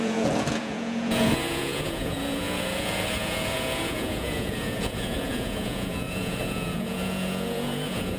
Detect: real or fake fake